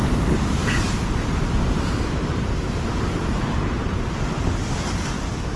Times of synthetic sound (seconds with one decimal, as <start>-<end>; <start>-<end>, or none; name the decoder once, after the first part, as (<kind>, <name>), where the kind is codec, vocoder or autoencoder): 0.6-4.0 (vocoder, BigVGAN v2)